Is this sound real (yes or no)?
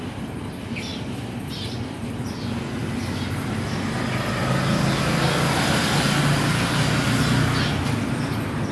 yes